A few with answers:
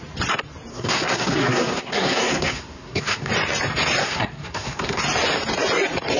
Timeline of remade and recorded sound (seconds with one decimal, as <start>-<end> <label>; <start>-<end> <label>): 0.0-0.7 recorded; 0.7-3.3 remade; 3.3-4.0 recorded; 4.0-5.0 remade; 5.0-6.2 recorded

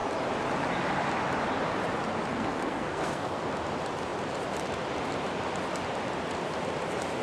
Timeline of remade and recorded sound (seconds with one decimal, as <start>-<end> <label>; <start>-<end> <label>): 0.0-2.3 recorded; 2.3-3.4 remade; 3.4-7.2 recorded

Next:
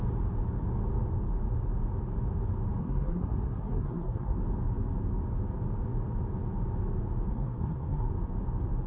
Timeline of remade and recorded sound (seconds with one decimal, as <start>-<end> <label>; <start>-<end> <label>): 0.0-2.8 recorded; 2.8-4.4 remade; 4.4-7.3 recorded; 7.3-8.1 remade; 8.1-8.9 recorded

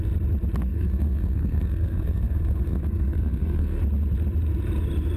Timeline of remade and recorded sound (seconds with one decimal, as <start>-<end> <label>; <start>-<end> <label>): 0.0-0.7 recorded; 0.7-3.8 remade; 3.8-5.2 recorded

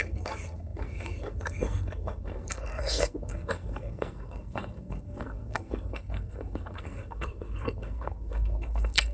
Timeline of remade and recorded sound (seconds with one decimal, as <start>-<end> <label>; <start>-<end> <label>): 0.0-9.1 remade

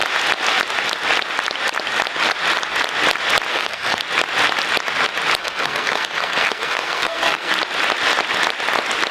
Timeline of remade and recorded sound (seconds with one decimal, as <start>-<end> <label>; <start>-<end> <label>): 0.0-3.5 recorded; 3.5-4.0 remade; 4.0-5.4 recorded; 5.4-7.5 remade; 7.5-9.1 recorded